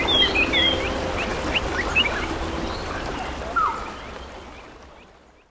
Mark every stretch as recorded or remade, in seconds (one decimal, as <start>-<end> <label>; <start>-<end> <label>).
0.0-5.5 recorded